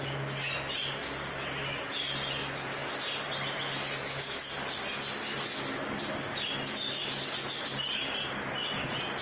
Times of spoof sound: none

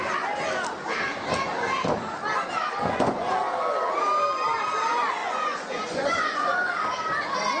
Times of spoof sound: 2.8-3.4 (vocoder, Vocos); 5.2-6.7